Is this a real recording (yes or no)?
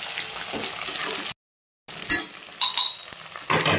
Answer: yes